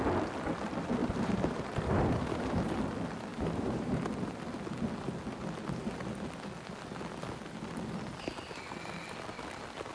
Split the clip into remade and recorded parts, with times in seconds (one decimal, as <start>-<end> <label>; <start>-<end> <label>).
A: 0.0-1.0 recorded; 1.0-2.8 remade; 2.8-3.3 recorded; 3.3-4.0 remade; 4.0-9.9 recorded